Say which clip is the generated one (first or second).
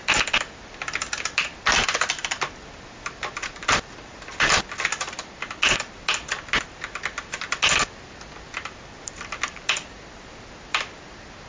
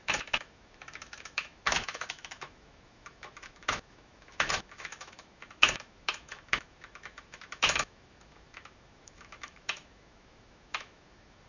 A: second